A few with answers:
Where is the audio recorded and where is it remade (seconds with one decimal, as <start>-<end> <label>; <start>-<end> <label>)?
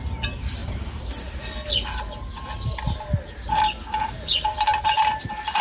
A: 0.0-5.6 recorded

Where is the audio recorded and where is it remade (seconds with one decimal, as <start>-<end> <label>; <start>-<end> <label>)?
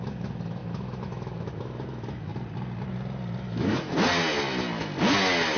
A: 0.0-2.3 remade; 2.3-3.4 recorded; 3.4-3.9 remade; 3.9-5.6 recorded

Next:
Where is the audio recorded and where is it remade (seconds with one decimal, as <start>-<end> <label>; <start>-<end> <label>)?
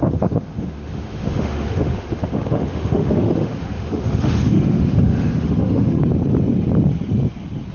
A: 0.0-6.0 remade; 6.0-7.7 recorded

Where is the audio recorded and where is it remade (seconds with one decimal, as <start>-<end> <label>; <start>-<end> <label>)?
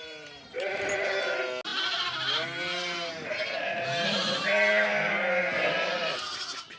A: 0.0-6.8 recorded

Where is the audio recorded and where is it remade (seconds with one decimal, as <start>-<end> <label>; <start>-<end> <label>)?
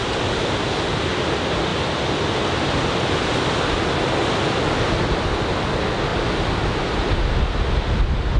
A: 0.0-8.4 recorded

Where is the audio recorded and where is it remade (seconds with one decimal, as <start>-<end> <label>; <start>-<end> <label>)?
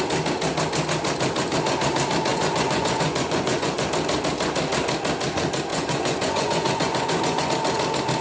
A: 0.0-2.3 recorded; 2.3-3.8 remade; 3.8-5.7 recorded; 5.7-7.5 remade; 7.5-8.2 recorded